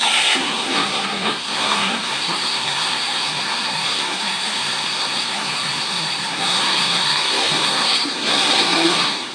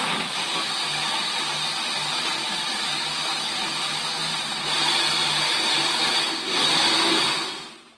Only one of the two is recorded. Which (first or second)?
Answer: second